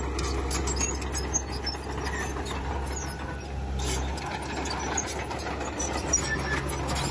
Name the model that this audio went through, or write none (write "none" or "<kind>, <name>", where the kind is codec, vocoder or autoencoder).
none